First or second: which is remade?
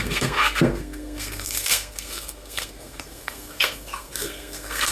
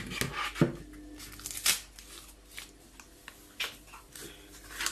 first